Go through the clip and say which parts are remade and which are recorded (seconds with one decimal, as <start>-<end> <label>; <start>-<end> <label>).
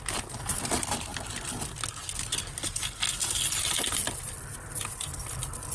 0.0-5.7 recorded